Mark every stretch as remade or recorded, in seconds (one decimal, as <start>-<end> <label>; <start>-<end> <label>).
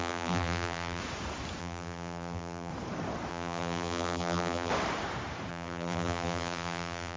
0.0-1.0 remade; 1.0-1.6 recorded; 1.6-2.7 remade; 2.7-3.3 recorded; 3.3-4.7 remade; 4.7-5.5 recorded; 5.5-7.2 remade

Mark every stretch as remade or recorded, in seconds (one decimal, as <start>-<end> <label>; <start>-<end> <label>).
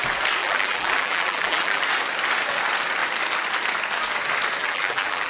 0.0-0.4 recorded; 0.4-1.8 remade; 1.8-4.6 recorded; 4.6-5.3 remade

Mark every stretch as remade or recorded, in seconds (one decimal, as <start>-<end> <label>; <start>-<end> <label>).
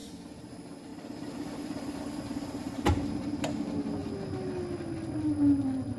0.0-0.5 remade; 0.5-0.9 recorded; 0.9-3.4 remade; 3.4-6.0 recorded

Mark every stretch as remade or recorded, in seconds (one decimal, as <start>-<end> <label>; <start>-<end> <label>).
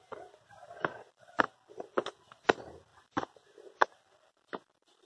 0.0-0.6 recorded; 0.6-1.3 remade; 1.3-5.0 recorded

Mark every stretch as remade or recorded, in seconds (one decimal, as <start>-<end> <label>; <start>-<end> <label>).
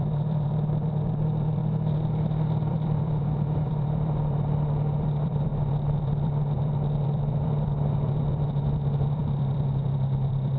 0.0-1.6 remade; 1.6-2.7 recorded; 2.7-10.6 remade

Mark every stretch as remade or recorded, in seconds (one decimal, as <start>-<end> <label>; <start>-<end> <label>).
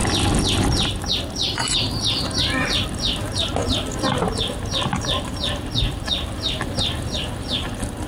0.0-8.1 recorded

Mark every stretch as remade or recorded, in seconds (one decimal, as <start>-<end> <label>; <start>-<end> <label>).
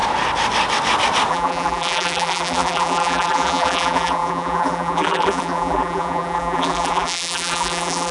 0.0-1.3 recorded; 1.3-8.1 remade